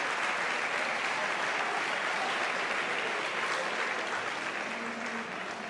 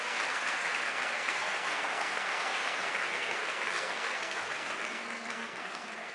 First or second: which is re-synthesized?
second